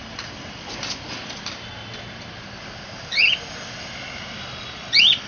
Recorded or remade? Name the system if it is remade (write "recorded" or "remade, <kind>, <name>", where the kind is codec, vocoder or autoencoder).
recorded